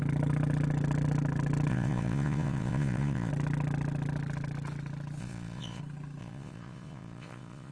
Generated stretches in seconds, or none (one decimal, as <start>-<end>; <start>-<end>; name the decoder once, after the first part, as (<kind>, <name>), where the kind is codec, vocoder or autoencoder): 1.7-3.3 (vocoder, Vocos); 5.2-5.8; 6.2-7.7